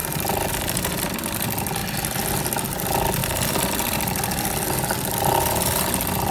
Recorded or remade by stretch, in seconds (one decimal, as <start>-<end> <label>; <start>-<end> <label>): 0.0-3.2 recorded; 3.2-4.9 remade; 4.9-6.3 recorded

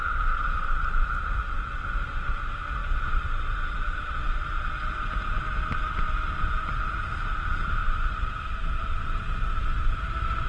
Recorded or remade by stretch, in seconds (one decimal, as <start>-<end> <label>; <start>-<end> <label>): 0.0-2.8 recorded; 2.8-4.7 remade; 4.7-7.8 recorded; 7.8-9.0 remade; 9.0-10.5 recorded

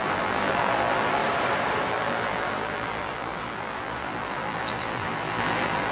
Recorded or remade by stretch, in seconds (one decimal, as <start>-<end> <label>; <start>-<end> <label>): 0.0-1.2 remade; 1.2-1.9 recorded; 1.9-5.9 remade

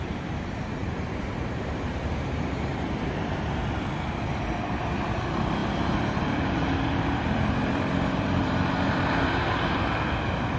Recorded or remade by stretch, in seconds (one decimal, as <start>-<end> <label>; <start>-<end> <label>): 0.0-0.8 recorded; 0.8-3.0 remade; 3.0-5.6 recorded; 5.6-9.8 remade; 9.8-10.6 recorded

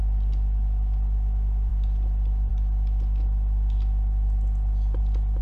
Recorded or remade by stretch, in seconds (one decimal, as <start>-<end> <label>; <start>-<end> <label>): 0.0-5.4 recorded

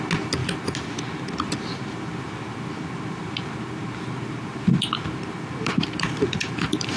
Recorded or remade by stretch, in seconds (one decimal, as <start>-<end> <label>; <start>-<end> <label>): 0.0-0.4 recorded; 0.4-2.7 remade; 2.7-3.2 recorded; 3.2-7.0 remade